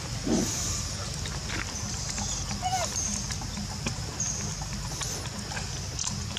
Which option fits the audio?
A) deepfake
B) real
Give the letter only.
B